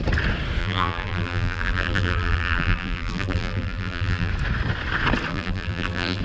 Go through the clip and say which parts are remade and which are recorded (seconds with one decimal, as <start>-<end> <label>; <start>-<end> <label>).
0.0-0.6 recorded; 0.6-4.3 remade; 4.3-5.3 recorded; 5.3-6.2 remade